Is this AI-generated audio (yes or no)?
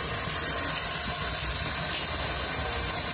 no